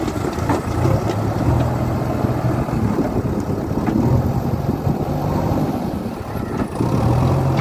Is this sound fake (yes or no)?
no